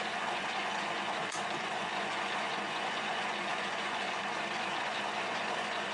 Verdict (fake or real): fake